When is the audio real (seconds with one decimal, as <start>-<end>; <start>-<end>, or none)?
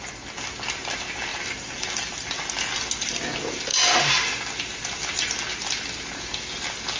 0.0-1.3; 2.6-7.0